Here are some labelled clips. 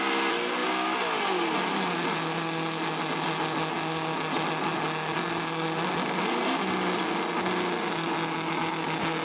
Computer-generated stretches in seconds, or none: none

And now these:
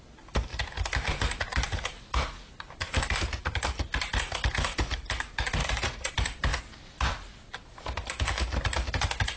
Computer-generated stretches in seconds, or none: 5.6-6.1 (vocoder, Vocos)

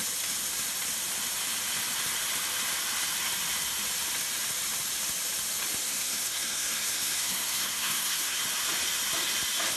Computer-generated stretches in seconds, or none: 5.8-8.4 (codec, SNAC)

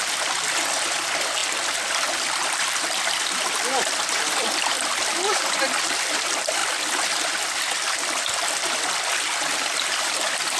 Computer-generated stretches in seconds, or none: 0.0-6.6 (vocoder, BigVGAN v2); 9.6-10.6

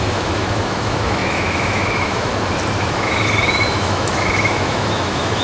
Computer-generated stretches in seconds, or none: 0.0-2.3 (autoencoder, DAC-VAE); 2.8-5.4

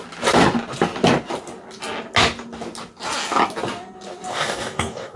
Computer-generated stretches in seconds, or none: 4.3-5.2 (codec, DAC)

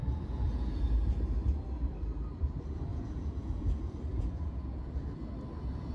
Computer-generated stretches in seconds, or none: 0.0-0.8 (vocoder, Vocos); 2.9-3.6; 4.1-5.0

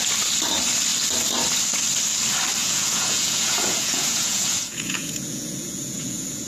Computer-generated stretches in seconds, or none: 2.6-6.5 (vocoder, Vocos)